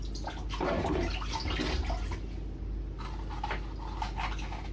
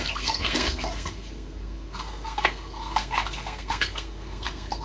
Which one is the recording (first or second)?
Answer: first